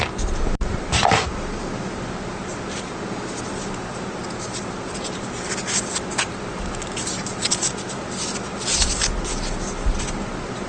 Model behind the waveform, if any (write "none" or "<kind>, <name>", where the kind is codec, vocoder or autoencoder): none